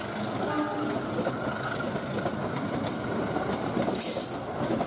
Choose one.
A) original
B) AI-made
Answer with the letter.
A